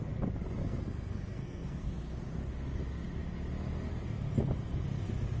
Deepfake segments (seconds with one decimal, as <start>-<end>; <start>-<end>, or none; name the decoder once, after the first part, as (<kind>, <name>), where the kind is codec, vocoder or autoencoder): 0.6-1.9 (codec, SNAC)